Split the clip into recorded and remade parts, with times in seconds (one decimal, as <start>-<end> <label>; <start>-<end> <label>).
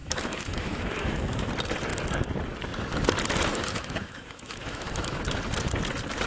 0.0-1.5 remade; 1.5-3.5 recorded; 3.5-5.2 remade; 5.2-6.3 recorded